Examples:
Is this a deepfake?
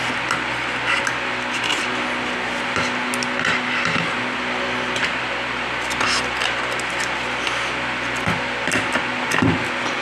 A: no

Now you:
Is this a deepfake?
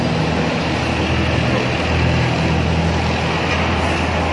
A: no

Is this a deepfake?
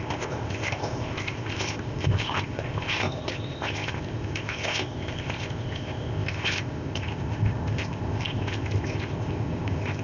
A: yes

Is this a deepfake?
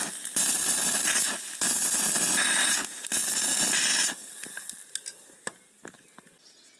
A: no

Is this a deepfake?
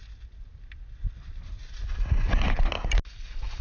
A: no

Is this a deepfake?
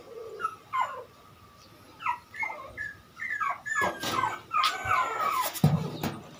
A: no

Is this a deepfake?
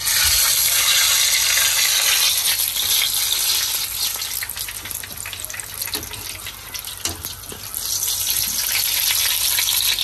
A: no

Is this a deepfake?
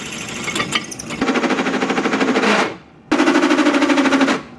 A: no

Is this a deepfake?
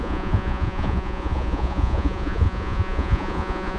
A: yes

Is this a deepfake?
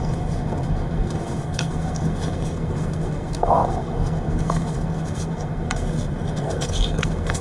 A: yes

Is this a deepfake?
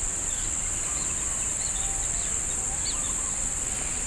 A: no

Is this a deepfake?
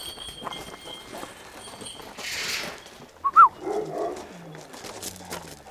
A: no